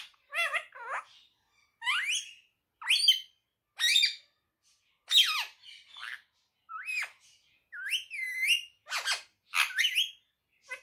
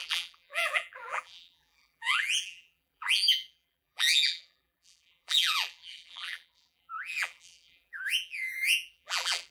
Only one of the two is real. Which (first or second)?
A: first